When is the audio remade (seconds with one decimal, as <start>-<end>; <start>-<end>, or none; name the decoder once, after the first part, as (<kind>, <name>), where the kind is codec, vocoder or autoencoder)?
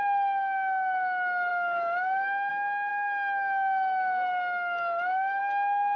none